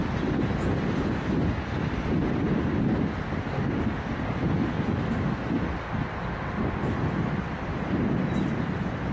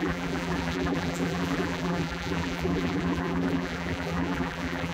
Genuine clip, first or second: first